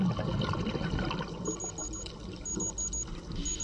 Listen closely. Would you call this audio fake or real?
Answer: real